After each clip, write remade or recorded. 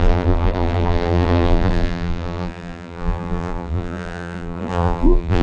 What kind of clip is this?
remade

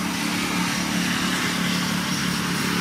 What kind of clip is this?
recorded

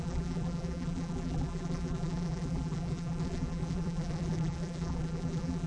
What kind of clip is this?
remade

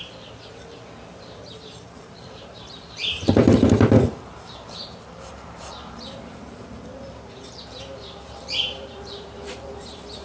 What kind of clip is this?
remade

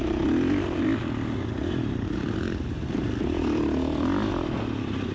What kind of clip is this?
remade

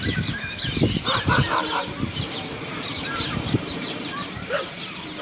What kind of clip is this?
remade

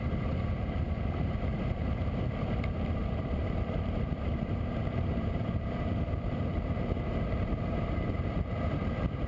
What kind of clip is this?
remade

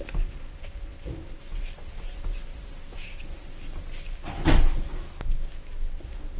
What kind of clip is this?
recorded